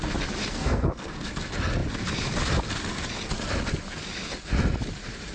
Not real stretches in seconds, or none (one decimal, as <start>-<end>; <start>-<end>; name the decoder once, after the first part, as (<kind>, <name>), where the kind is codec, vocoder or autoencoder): 0.5-1.3 (codec, SNAC)